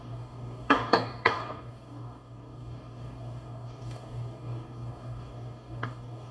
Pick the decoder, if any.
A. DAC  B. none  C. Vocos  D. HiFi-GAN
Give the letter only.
A